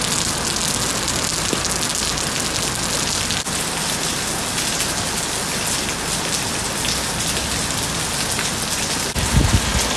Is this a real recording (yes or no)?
yes